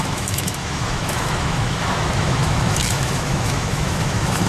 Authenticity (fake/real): fake